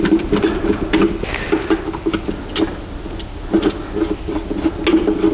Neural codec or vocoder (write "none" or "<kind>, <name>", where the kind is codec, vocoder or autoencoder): none